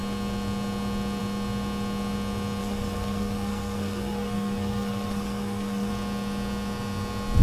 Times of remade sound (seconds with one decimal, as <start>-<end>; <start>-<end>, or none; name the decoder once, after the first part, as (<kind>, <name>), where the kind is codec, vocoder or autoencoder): 2.6-5.9 (codec, SNAC)